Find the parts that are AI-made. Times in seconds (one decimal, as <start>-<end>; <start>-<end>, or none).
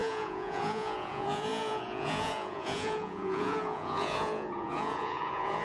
0.0-5.6